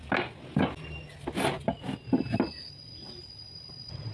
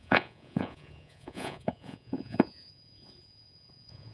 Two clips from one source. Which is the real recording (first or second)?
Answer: first